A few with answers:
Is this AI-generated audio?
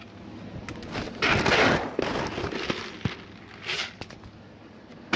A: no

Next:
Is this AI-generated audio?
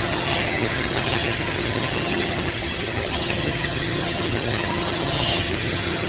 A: yes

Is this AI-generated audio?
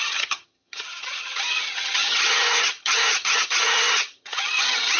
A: yes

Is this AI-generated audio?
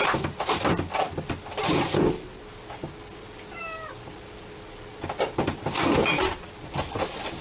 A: no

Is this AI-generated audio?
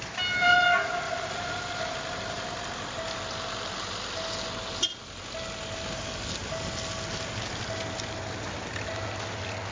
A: no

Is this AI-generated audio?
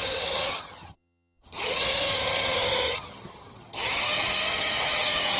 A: yes